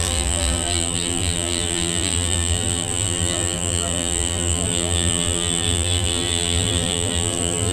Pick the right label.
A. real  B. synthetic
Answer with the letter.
B